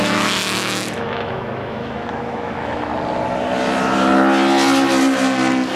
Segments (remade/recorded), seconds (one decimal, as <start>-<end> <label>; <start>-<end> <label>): 0.0-2.9 remade; 2.9-5.8 recorded

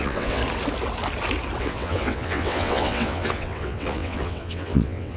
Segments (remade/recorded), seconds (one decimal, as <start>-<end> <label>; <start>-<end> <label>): 0.0-0.4 remade; 0.4-1.6 recorded; 1.6-5.2 remade

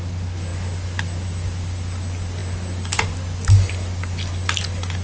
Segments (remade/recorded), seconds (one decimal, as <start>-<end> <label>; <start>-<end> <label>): 0.0-5.0 recorded

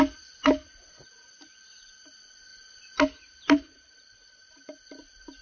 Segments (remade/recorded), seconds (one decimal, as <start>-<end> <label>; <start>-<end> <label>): 0.0-2.5 recorded; 2.5-5.4 remade